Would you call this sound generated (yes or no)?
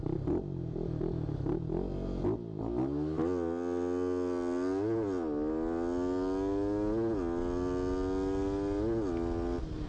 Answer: no